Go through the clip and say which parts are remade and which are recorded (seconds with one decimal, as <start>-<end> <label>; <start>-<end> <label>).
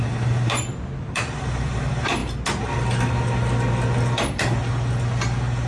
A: 0.0-2.2 remade; 2.2-5.7 recorded